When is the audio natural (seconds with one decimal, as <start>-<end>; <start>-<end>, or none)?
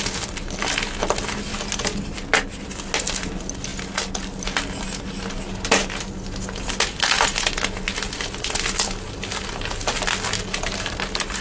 0.0-11.4